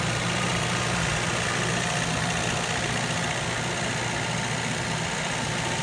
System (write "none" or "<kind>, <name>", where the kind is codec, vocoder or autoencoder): none